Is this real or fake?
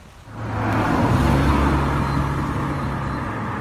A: real